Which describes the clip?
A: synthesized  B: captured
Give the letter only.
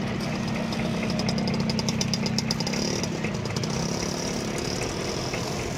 B